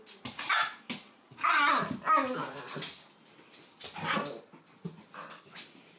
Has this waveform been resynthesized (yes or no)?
no